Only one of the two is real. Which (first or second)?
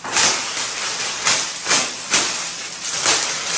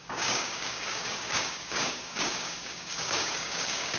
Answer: first